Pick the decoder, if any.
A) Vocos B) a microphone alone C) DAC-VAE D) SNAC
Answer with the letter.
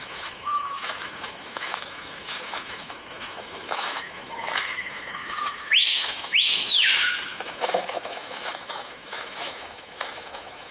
C